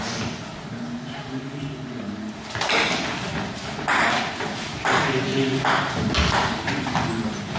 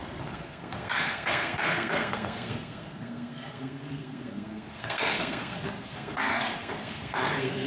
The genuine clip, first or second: first